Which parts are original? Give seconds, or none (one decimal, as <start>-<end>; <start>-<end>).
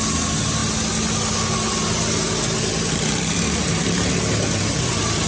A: 0.0-5.3